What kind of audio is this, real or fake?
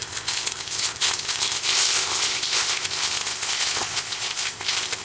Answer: fake